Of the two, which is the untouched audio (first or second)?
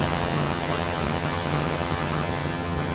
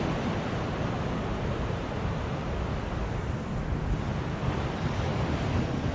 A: second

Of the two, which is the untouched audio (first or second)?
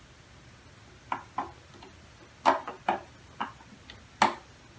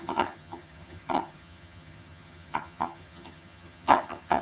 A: first